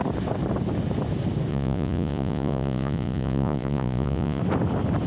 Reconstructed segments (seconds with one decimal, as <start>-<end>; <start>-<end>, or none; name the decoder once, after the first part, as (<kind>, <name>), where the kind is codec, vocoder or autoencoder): 1.5-4.4 (vocoder, Vocos)